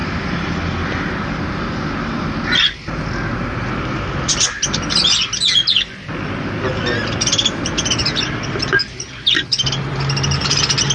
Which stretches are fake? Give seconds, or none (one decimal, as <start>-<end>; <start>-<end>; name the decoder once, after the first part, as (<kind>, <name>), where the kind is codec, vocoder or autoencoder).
none